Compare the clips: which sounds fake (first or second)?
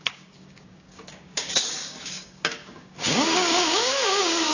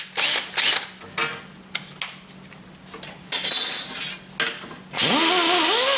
first